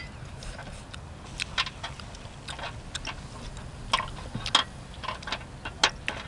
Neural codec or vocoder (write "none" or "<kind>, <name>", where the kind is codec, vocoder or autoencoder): none